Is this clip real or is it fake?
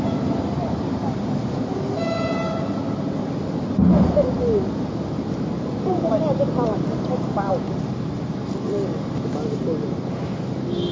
real